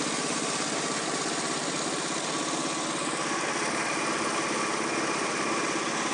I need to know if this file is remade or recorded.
recorded